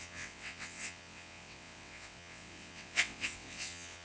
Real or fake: fake